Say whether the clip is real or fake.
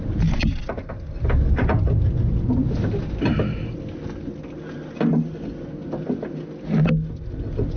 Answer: real